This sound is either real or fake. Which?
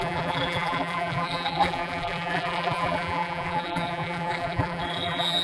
fake